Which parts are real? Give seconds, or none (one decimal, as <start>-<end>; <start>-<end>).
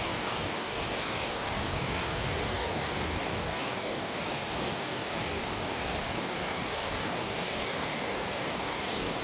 none